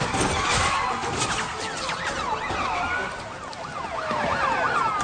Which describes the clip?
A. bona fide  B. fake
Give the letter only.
A